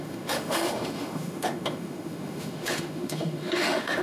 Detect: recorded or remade remade